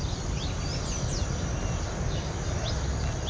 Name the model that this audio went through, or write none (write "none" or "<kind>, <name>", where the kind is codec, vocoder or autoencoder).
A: none